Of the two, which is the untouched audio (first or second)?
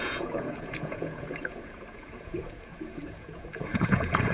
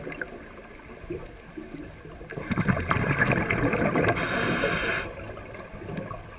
second